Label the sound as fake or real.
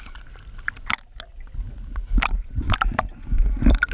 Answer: real